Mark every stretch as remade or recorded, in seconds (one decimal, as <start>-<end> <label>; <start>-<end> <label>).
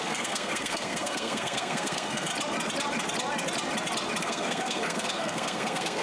0.0-2.3 remade; 2.3-4.2 recorded; 4.2-6.0 remade